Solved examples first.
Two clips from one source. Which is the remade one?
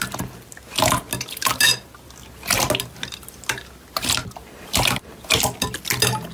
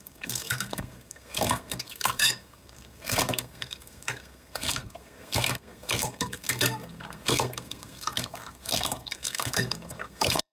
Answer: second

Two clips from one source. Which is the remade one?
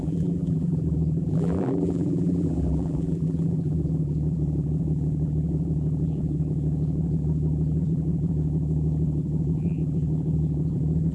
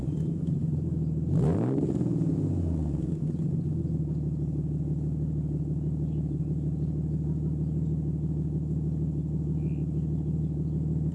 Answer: first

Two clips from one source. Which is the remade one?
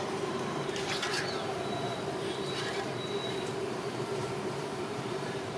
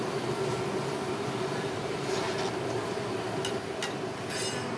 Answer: first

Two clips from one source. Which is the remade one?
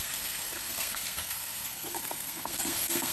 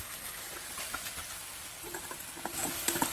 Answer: first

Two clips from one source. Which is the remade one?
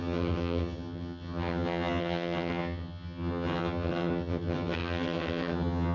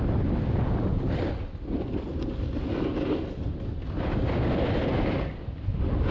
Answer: first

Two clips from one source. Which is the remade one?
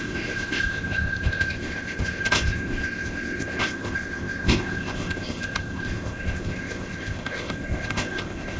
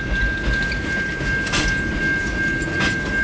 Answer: first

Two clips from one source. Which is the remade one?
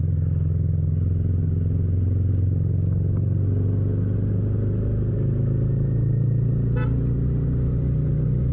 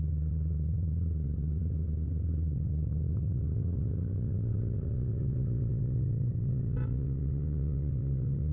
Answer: second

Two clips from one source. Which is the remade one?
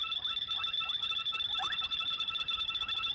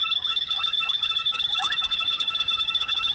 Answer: second